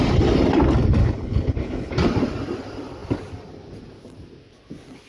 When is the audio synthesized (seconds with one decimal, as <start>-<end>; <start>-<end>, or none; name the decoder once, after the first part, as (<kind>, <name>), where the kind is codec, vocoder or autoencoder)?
1.0-1.9 (codec, HILCodec)